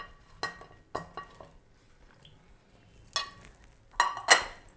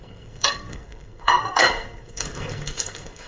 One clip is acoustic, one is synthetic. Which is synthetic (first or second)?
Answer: second